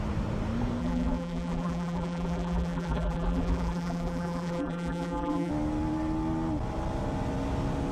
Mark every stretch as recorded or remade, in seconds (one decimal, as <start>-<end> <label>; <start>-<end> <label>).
0.0-0.8 recorded; 0.8-5.5 remade; 5.5-7.9 recorded